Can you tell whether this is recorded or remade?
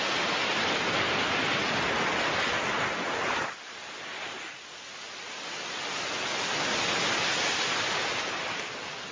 recorded